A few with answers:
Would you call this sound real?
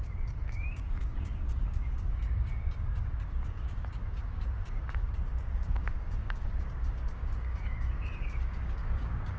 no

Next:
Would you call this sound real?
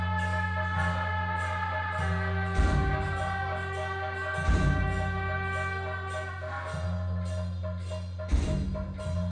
yes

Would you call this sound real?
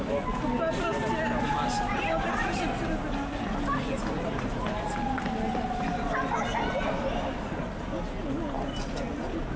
yes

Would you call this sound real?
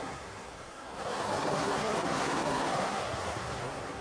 no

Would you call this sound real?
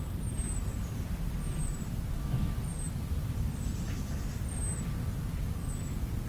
yes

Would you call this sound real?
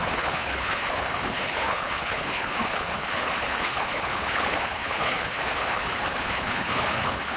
no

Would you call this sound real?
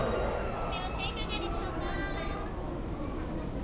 yes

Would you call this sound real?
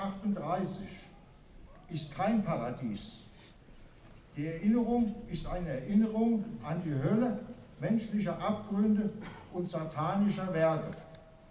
yes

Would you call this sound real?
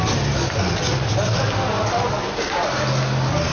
yes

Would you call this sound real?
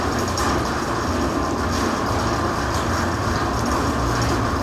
yes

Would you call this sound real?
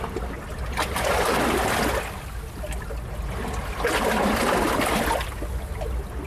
yes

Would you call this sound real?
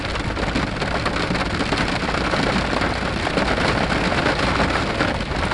yes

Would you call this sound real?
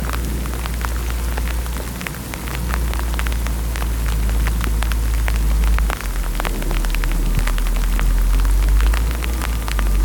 yes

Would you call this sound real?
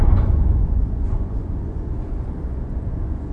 no